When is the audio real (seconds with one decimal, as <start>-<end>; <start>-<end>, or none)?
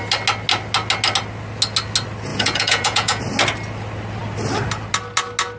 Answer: 0.0-2.3; 3.2-5.6